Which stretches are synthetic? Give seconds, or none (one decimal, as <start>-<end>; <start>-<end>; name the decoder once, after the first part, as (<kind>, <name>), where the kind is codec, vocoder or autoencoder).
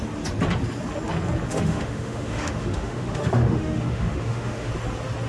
1.5-4.7 (autoencoder, DAC-VAE)